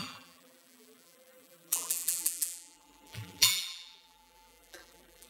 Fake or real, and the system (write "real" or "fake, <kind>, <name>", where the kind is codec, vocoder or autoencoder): fake, vocoder, BigVGAN v2